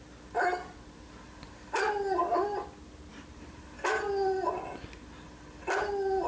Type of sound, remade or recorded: recorded